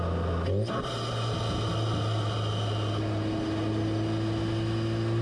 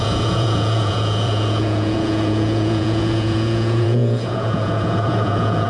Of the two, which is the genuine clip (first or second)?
first